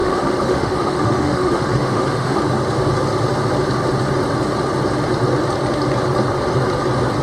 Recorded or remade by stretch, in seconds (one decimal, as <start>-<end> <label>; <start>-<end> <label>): 0.0-2.4 remade; 2.4-7.2 recorded